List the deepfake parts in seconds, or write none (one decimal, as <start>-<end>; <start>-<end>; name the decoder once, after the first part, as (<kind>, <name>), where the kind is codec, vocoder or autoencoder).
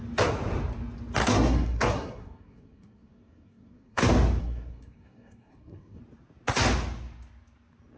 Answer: 1.2-4.0 (codec, SNAC); 4.4-6.0